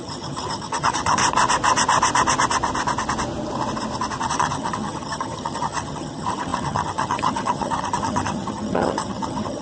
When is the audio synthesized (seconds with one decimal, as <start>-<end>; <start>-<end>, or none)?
0.0-1.2; 4.2-9.6